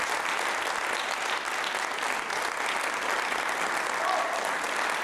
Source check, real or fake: real